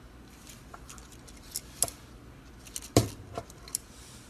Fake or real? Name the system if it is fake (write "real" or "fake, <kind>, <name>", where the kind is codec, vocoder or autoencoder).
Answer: real